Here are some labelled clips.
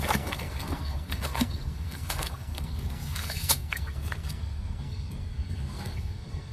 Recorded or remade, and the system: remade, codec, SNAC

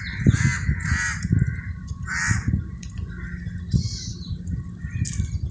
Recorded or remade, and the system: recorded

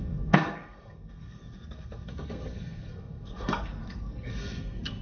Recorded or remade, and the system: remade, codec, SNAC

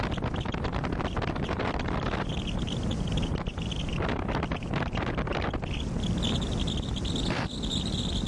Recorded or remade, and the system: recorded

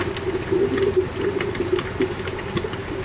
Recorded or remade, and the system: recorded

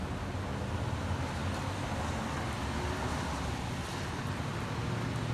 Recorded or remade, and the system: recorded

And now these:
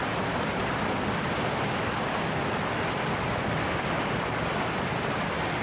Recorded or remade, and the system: recorded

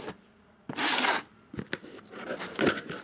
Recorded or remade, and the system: recorded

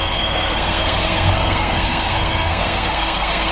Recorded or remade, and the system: remade, codec, SNAC